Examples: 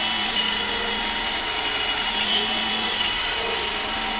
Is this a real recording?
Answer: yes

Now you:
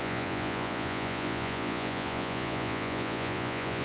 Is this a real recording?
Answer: no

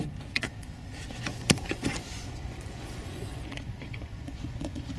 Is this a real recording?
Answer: no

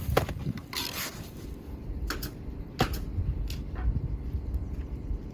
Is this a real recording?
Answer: yes